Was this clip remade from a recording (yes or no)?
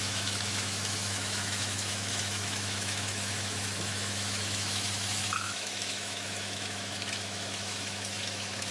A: yes